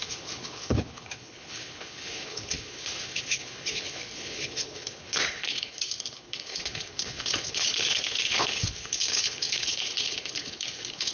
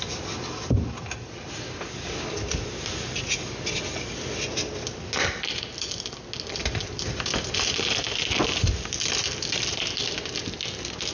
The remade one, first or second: first